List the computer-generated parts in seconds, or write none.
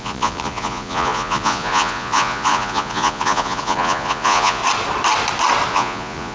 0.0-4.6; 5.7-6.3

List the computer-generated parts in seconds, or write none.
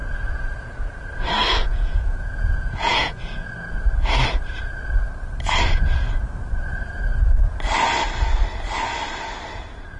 1.6-3.5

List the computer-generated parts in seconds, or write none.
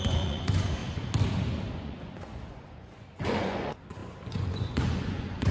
0.0-0.8; 1.7-5.5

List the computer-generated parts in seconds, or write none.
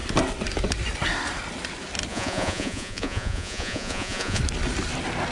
2.1-4.4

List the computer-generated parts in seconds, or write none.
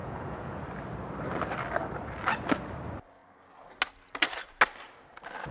0.0-0.6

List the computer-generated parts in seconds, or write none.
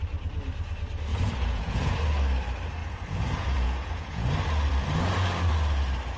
1.1-1.9; 2.8-4.3